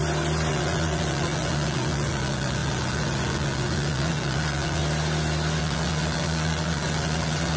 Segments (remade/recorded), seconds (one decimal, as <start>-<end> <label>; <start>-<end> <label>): 0.0-0.5 recorded; 0.5-4.8 remade; 4.8-5.6 recorded; 5.6-7.6 remade